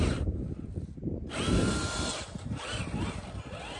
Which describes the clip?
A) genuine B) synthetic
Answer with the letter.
A